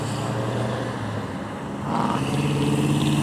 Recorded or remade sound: recorded